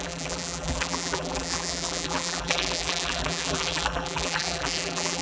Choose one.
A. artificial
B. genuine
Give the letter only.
A